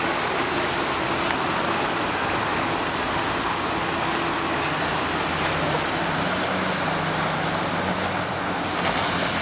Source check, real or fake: real